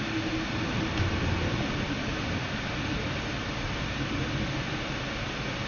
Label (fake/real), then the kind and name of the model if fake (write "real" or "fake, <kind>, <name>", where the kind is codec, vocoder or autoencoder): real